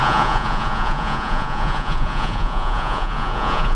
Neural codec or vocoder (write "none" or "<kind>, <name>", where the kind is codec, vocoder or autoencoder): vocoder, Vocos